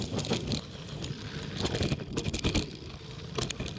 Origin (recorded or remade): recorded